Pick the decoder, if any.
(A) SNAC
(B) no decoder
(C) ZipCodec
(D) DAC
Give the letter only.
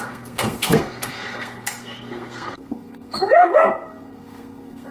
A